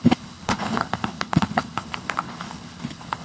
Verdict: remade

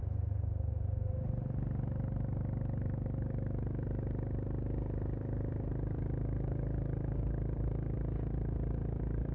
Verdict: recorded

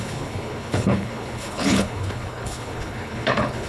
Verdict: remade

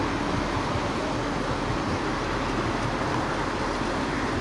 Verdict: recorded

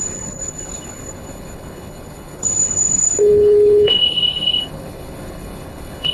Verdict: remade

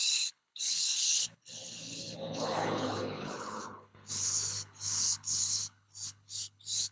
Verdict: remade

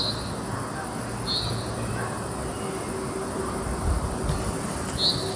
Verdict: recorded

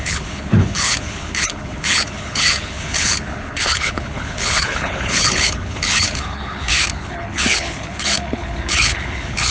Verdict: remade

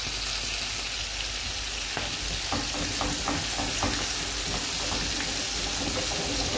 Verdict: recorded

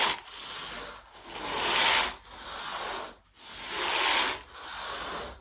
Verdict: recorded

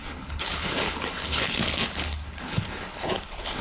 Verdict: remade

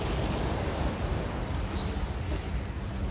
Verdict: recorded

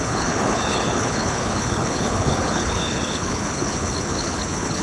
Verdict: remade